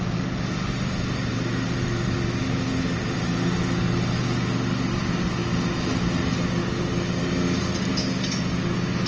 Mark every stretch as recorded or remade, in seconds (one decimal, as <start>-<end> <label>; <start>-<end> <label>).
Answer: 0.0-9.1 recorded